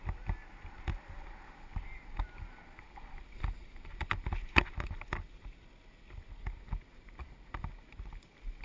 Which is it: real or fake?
real